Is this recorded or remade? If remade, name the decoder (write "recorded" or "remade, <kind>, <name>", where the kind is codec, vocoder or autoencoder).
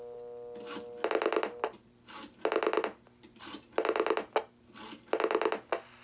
recorded